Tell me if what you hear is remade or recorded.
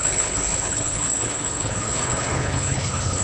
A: remade